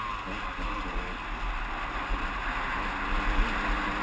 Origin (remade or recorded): recorded